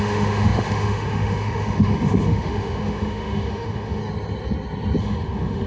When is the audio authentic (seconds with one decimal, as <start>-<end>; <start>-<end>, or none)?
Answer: 4.0-5.0